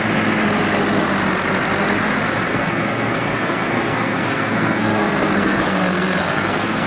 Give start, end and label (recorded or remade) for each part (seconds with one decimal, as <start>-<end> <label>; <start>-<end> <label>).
0.0-2.5 recorded; 2.5-6.9 remade